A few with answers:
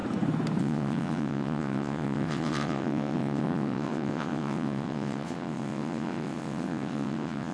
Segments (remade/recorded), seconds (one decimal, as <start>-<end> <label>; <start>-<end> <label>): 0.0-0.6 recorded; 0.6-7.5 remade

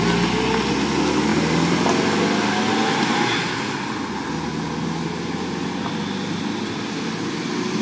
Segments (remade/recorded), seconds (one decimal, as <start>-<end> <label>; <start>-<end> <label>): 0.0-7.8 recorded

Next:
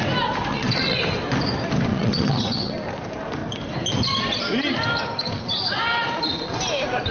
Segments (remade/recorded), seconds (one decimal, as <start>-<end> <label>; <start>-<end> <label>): 0.0-0.5 recorded; 0.5-1.0 remade; 1.0-1.9 recorded; 1.9-2.7 remade; 2.7-7.1 recorded

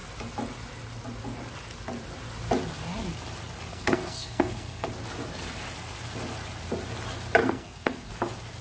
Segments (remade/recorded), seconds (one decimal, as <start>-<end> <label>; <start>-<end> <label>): 0.0-3.7 recorded; 3.7-4.9 remade; 4.9-7.4 recorded; 7.4-8.1 remade; 8.1-8.6 recorded

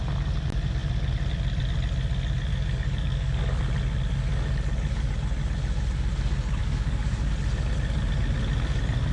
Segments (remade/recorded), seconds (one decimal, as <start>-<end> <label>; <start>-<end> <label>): 0.0-2.5 recorded; 2.5-3.6 remade; 3.6-6.6 recorded; 6.6-7.3 remade; 7.3-9.1 recorded

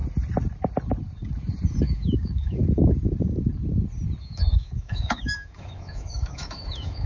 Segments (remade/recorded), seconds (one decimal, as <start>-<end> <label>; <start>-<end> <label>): 0.0-1.8 recorded; 1.8-2.6 remade; 2.6-4.2 recorded; 4.2-7.1 remade

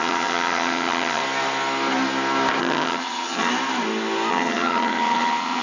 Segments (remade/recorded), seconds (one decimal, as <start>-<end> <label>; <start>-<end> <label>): 0.0-1.2 remade; 1.2-2.6 recorded; 2.6-3.5 remade; 3.5-4.3 recorded; 4.3-5.6 remade